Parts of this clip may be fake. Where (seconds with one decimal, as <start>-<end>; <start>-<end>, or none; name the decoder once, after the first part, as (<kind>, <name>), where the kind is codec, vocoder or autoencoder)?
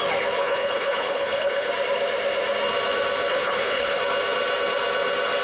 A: 0.4-1.7 (codec, HILCodec); 3.3-4.0